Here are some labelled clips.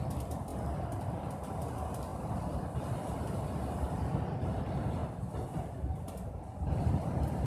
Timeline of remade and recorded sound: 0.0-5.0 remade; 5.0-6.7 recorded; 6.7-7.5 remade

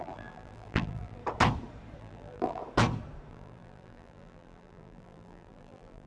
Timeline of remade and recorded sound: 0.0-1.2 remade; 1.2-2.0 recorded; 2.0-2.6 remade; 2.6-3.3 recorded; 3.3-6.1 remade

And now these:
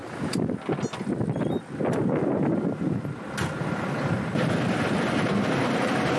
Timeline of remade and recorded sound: 0.0-6.2 recorded

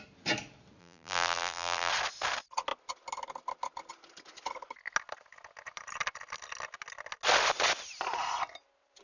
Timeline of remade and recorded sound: 0.0-0.8 recorded; 0.8-1.9 remade; 1.9-9.0 recorded

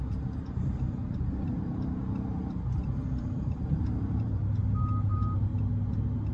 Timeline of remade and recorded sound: 0.0-4.4 remade; 4.4-5.1 recorded; 5.1-5.5 remade; 5.5-6.3 recorded

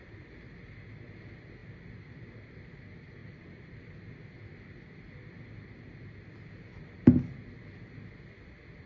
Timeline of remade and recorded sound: 0.0-3.2 recorded; 3.2-3.8 remade; 3.8-8.9 recorded

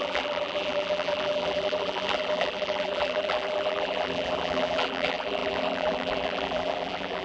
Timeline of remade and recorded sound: 0.0-7.2 remade